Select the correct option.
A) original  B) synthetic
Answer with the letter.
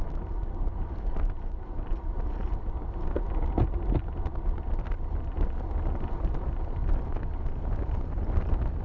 A